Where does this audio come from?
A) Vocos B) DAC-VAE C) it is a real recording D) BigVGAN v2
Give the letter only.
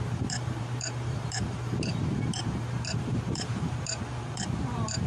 D